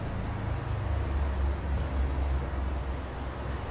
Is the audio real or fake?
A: real